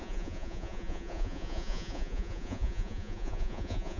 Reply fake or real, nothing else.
fake